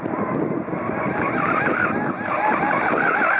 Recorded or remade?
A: recorded